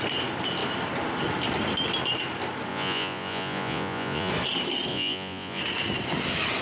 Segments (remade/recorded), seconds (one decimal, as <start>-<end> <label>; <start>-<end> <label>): 0.0-2.7 recorded; 2.7-4.3 remade; 4.3-4.9 recorded; 4.9-5.6 remade; 5.6-6.6 recorded